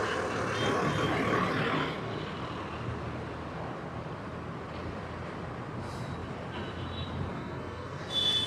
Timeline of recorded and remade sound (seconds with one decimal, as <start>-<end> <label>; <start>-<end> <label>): 0.0-7.3 recorded; 7.3-8.0 remade; 8.0-8.5 recorded